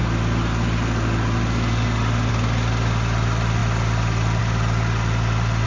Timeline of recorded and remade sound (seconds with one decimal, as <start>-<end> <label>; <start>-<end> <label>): 0.0-5.7 recorded